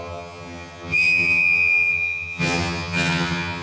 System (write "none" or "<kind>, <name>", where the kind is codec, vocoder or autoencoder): vocoder, HiFi-GAN